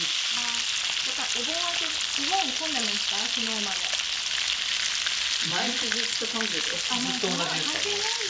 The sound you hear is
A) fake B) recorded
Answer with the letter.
B